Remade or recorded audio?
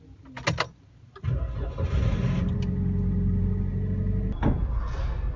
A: recorded